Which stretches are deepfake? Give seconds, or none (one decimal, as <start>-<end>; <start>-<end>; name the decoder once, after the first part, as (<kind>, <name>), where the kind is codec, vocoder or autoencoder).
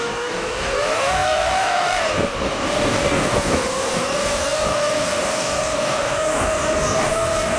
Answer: 0.0-7.6 (codec, DAC)